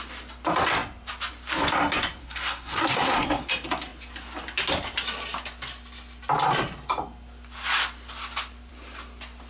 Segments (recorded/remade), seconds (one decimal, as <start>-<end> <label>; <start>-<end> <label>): 0.0-2.2 recorded; 2.2-3.5 remade; 3.5-9.5 recorded